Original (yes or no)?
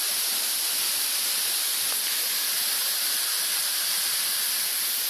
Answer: yes